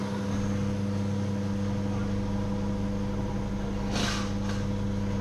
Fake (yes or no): no